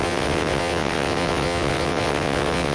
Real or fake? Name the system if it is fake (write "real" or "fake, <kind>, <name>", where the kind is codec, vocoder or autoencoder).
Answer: fake, vocoder, WaveNeXt